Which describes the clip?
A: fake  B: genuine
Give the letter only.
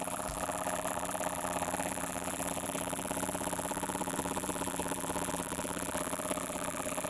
A